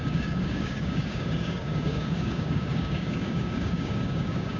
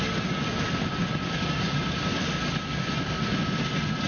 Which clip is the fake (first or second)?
first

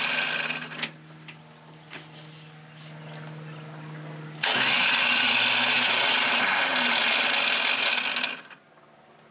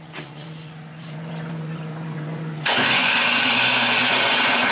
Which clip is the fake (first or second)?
second